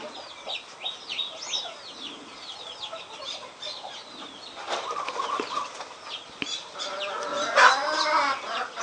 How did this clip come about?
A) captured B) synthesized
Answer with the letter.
A